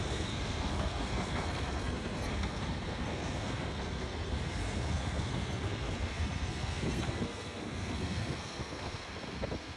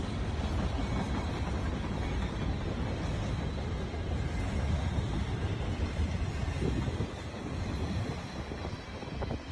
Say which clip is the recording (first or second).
second